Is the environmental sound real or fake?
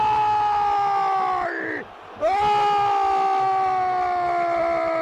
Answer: real